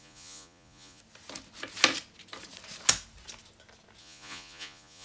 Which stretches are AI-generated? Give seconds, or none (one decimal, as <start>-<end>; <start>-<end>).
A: 0.0-1.0; 4.0-5.0